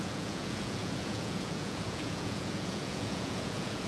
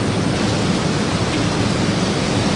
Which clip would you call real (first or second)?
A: second